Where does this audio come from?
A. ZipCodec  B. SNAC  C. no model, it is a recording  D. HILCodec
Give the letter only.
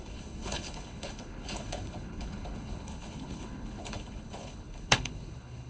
D